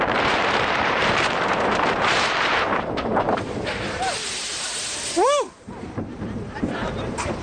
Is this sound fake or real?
fake